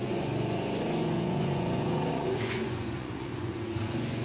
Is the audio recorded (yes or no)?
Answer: no